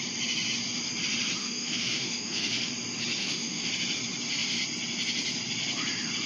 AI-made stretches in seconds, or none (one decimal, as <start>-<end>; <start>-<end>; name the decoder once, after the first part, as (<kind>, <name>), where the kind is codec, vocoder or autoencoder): 1.4-2.7 (autoencoder, DAC-VAE); 3.2-3.7